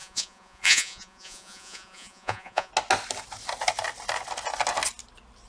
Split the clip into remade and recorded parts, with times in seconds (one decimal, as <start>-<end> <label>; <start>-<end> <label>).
0.0-2.7 remade; 2.7-5.5 recorded